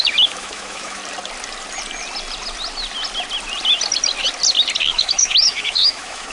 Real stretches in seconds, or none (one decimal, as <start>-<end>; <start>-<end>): 1.0-4.8